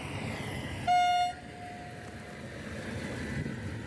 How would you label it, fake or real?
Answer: real